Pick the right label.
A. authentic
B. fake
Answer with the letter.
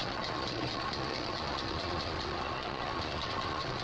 B